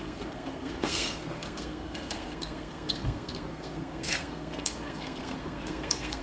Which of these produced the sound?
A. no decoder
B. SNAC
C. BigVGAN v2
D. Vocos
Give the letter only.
B